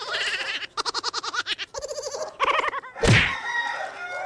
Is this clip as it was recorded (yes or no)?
yes